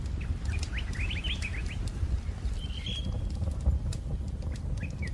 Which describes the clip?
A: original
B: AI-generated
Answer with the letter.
A